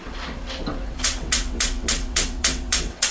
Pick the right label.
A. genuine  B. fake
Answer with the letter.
B